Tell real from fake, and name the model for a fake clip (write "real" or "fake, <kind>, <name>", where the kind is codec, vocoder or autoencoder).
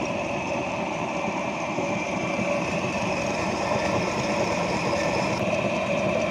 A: fake, vocoder, BigVGAN v2